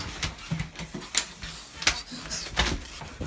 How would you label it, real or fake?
real